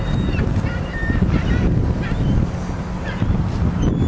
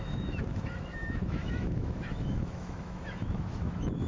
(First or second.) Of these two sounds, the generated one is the second